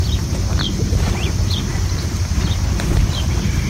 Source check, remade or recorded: remade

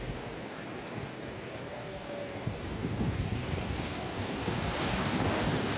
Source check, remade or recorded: remade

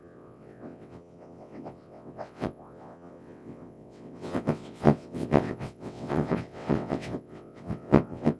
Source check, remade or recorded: remade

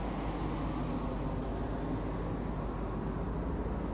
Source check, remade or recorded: recorded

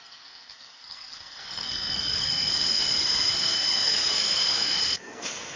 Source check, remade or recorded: remade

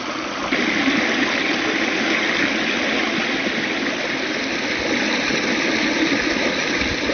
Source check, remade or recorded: recorded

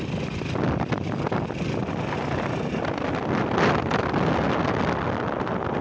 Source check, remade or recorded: recorded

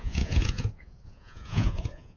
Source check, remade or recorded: remade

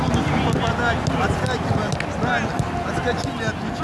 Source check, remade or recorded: recorded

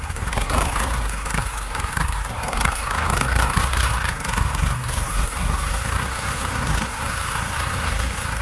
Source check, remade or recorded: remade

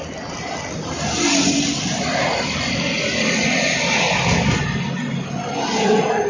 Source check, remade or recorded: recorded